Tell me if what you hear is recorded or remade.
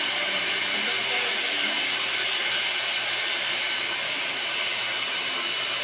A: recorded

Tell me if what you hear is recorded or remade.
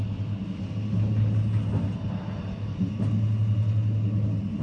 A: recorded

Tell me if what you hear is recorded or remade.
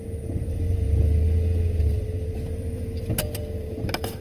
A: recorded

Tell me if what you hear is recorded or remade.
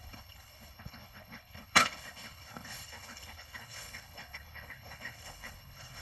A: remade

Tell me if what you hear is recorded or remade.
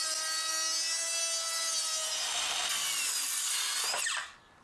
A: recorded